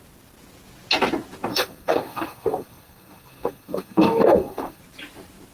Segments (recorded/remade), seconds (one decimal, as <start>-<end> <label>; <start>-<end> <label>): 0.0-1.5 recorded; 1.5-4.8 remade; 4.8-5.5 recorded